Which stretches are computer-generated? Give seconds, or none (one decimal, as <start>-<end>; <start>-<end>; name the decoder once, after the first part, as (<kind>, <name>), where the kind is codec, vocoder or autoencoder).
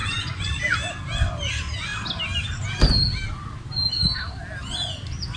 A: 0.0-0.6 (vocoder, Vocos)